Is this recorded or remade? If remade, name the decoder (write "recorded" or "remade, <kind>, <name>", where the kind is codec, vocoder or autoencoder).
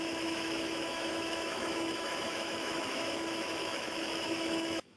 remade, autoencoder, DAC-VAE